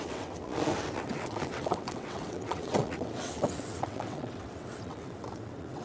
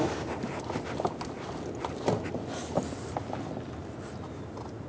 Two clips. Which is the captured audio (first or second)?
second